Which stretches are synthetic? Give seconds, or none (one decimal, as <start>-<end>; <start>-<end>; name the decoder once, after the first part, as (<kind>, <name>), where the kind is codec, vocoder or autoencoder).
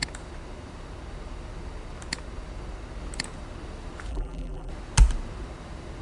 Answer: 4.1-4.7 (vocoder, BigVGAN v2)